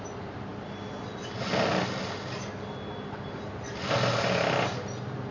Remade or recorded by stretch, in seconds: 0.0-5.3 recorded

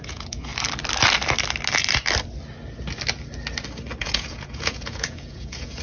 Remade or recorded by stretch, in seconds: 0.0-0.5 remade; 0.5-4.0 recorded; 4.0-5.8 remade

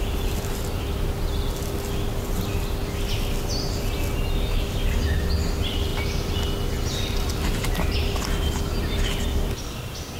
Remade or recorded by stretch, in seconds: 0.0-10.2 recorded

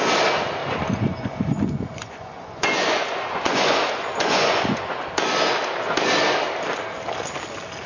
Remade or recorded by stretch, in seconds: 0.0-0.6 recorded; 0.6-4.9 remade; 4.9-7.9 recorded

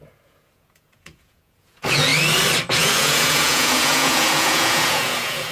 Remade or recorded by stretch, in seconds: 0.0-2.1 remade; 2.1-2.7 recorded; 2.7-5.5 remade